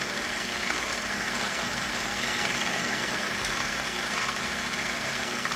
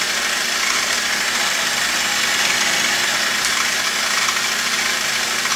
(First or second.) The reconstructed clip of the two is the first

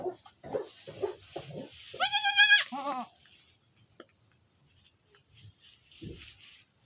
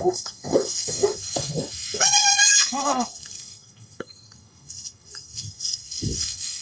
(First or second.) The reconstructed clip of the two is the second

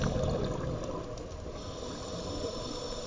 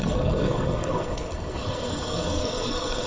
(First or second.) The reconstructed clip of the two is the second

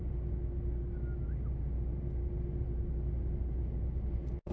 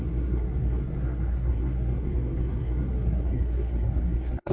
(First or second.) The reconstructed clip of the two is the second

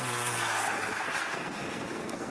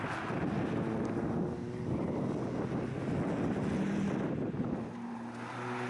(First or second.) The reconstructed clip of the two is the first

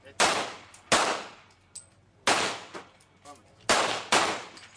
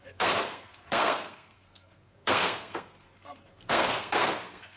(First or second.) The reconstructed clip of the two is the second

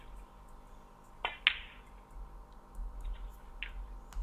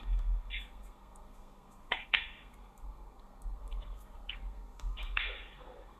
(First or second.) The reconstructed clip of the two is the second